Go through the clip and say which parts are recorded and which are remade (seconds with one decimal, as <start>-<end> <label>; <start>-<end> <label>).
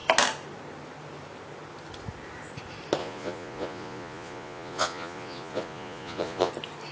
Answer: 0.0-3.0 recorded; 3.0-6.5 remade; 6.5-6.9 recorded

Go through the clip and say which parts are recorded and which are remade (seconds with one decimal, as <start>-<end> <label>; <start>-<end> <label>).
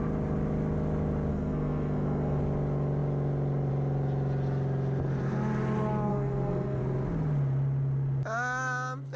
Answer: 0.0-1.3 recorded; 1.3-2.4 remade; 2.4-6.1 recorded; 6.1-6.8 remade; 6.8-9.2 recorded